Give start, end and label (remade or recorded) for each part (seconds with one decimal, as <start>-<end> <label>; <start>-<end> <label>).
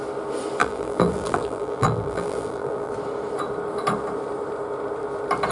0.0-0.6 recorded; 0.6-2.9 remade; 2.9-5.5 recorded